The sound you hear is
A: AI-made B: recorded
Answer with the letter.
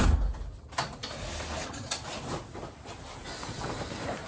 B